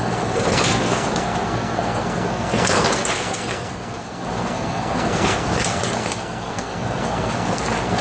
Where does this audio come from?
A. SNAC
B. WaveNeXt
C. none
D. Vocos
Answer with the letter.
A